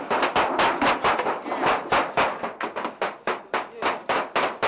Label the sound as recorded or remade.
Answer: recorded